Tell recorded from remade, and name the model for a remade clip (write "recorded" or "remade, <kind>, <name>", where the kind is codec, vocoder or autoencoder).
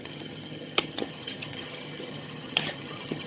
remade, vocoder, HiFi-GAN